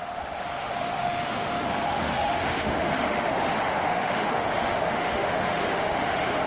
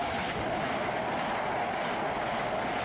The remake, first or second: first